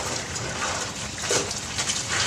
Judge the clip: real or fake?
real